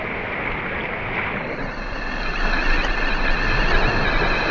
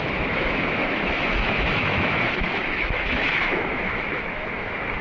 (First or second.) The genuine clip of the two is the first